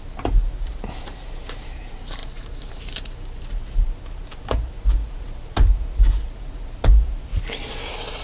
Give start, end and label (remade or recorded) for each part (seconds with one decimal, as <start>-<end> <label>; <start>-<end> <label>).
0.0-7.3 remade; 7.3-8.2 recorded